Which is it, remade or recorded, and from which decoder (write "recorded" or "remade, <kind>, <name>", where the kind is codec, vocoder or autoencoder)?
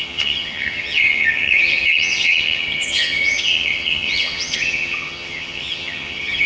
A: remade, vocoder, HiFi-GAN